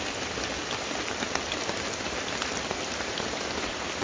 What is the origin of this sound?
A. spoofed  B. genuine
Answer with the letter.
B